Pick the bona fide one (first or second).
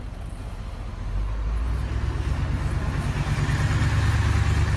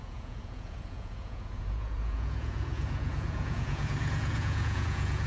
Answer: first